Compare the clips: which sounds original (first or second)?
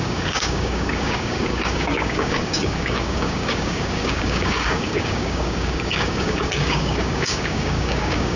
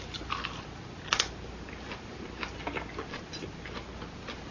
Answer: second